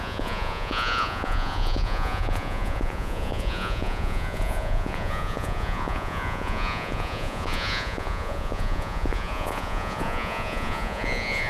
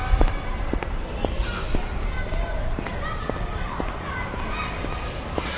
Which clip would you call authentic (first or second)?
second